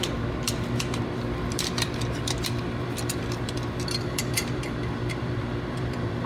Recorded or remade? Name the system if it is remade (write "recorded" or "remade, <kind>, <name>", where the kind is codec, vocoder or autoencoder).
remade, vocoder, BigVGAN v2